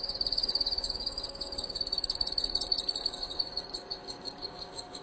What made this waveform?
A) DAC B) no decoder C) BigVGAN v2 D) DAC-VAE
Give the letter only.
A